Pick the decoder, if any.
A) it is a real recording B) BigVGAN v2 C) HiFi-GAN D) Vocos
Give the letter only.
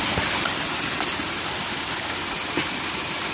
A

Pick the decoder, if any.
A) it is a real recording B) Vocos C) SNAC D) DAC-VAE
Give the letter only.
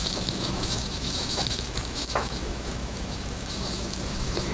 D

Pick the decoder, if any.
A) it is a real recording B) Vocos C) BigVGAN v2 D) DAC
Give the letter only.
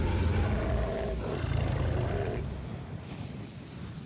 A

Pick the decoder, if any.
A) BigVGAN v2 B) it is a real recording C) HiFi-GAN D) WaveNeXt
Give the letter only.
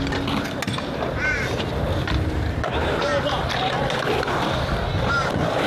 B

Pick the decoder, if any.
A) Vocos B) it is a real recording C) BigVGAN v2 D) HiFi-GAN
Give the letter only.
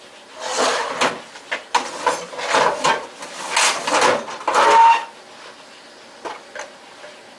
B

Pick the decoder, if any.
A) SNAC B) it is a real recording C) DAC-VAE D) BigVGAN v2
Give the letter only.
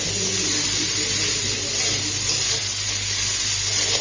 B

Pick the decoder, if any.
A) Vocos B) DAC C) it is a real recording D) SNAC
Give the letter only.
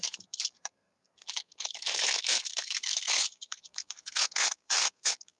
D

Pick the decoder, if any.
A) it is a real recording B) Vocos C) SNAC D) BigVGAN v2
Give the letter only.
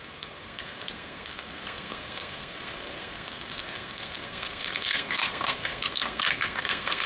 C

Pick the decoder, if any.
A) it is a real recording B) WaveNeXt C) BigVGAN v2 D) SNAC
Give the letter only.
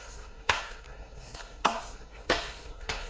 D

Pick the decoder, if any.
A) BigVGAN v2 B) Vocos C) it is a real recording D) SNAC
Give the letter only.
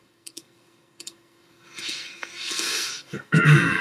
D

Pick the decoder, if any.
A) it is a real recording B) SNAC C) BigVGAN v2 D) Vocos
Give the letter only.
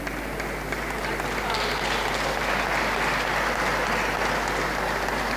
A